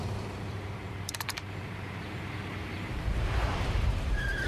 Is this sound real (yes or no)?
no